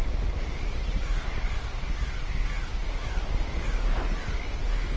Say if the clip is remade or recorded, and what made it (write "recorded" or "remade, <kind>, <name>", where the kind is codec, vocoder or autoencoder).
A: recorded